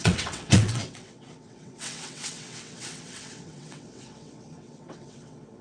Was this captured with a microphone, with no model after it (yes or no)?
no